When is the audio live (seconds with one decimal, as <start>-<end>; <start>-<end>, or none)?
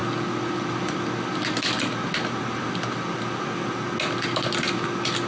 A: 0.0-5.3